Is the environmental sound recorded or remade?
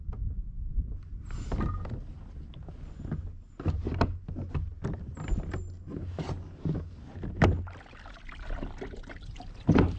recorded